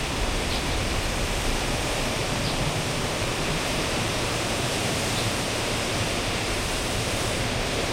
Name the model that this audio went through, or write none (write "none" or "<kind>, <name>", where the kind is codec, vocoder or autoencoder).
vocoder, BigVGAN v2